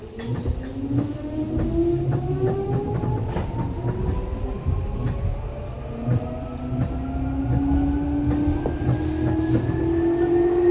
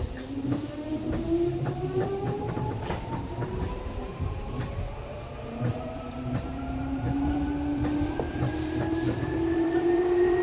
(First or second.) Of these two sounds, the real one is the first